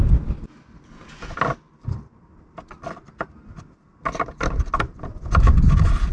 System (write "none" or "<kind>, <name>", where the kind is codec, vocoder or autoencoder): none